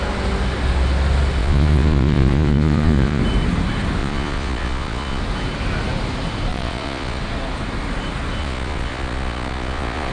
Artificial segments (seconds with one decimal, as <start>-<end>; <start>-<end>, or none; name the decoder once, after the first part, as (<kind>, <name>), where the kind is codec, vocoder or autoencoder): 1.4-3.2 (vocoder, Vocos); 4.0-5.2; 6.5-7.2; 8.4-10.1